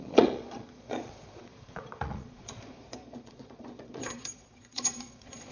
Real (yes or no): no